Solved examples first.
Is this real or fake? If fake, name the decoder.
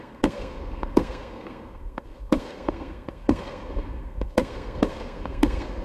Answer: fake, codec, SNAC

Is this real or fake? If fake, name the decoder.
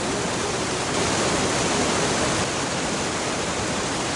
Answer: real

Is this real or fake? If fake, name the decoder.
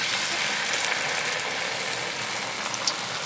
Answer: real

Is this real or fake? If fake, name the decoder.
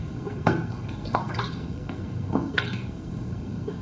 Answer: fake, codec, SNAC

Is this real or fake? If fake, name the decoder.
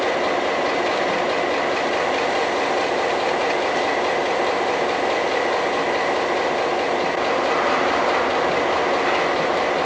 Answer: real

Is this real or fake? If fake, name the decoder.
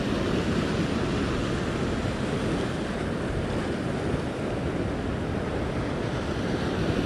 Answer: real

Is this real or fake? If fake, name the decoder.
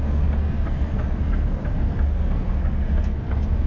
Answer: fake, codec, SNAC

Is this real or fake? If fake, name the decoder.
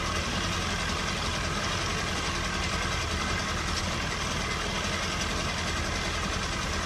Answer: real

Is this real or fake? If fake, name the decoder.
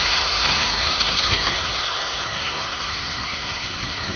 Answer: fake, codec, SNAC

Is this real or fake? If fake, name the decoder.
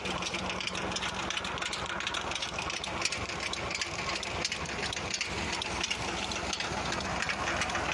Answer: real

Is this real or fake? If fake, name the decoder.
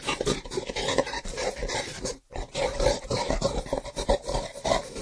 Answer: real